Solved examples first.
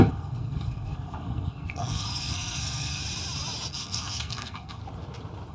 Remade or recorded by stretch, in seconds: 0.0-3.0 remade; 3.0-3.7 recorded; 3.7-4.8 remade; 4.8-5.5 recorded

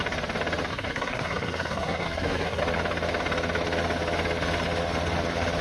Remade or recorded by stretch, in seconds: 0.0-0.7 recorded; 0.7-2.6 remade; 2.6-5.6 recorded

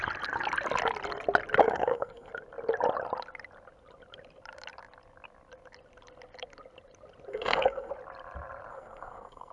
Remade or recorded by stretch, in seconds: 0.0-1.6 recorded; 1.6-2.3 remade; 2.3-7.3 recorded; 7.3-7.9 remade; 7.9-8.7 recorded; 8.7-9.5 remade

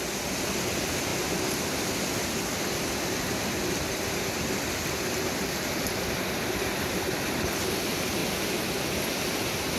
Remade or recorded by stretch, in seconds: 0.0-9.8 recorded